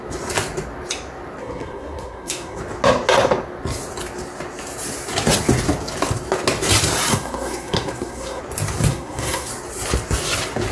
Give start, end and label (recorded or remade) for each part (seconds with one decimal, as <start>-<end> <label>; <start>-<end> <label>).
0.0-1.4 recorded; 1.4-2.6 remade; 2.6-7.1 recorded; 7.1-8.4 remade; 8.4-8.9 recorded; 8.9-9.5 remade; 9.5-10.7 recorded